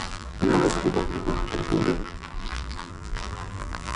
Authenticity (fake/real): fake